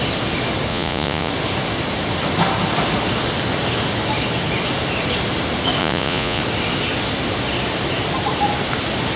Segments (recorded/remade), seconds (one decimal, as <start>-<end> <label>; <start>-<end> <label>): 0.0-0.7 recorded; 0.7-1.3 remade; 1.3-5.8 recorded; 5.8-6.4 remade; 6.4-9.2 recorded